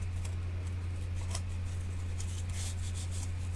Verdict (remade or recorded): recorded